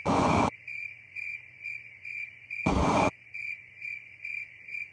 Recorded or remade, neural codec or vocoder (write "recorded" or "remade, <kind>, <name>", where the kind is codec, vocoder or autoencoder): remade, vocoder, Vocos